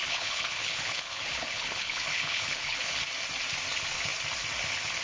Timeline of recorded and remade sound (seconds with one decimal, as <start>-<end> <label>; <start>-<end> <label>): 0.0-3.0 remade; 3.0-5.0 recorded